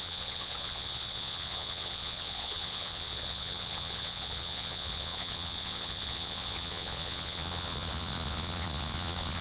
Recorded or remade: remade